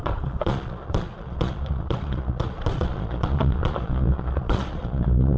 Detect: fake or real fake